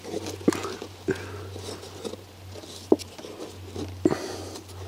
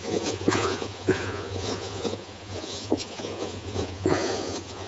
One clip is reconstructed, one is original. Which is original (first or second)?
first